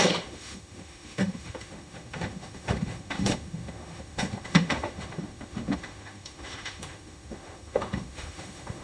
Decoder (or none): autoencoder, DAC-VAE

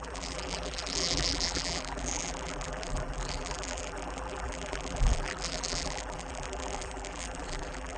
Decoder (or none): vocoder, BigVGAN v2